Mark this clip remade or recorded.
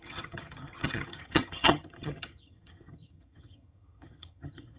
remade